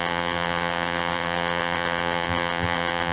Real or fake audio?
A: fake